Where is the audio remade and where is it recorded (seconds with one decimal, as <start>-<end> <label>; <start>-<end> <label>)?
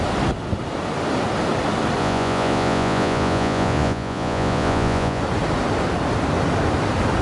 0.0-2.0 recorded; 2.0-5.2 remade; 5.2-7.2 recorded